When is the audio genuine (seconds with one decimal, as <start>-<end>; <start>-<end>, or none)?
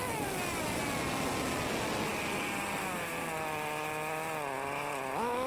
0.0-5.5